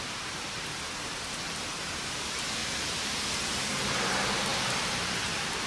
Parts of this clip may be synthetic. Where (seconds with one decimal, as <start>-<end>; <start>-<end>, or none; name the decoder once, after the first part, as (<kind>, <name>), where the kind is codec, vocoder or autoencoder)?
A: 0.0-2.6 (vocoder, BigVGAN v2); 3.8-5.7